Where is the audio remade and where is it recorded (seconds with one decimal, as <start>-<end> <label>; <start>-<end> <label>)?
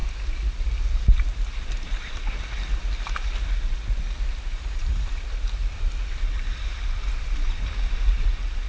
0.0-8.7 recorded